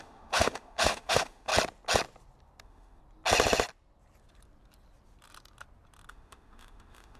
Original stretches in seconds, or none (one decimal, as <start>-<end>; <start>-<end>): 1.5-2.6; 3.0-6.1